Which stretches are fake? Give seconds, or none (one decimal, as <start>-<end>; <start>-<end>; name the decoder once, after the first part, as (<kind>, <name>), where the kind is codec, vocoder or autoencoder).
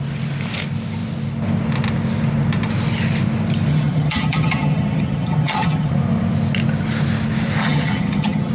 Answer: 3.7-5.9 (vocoder, HiFi-GAN); 7.6-8.5